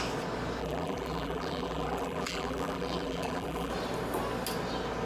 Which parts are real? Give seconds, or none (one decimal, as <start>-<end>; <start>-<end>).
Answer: 0.0-0.6; 3.7-5.1